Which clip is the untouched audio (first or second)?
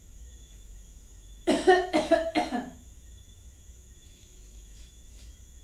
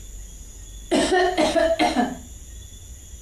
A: second